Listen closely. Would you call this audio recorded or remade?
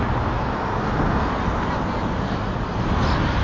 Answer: recorded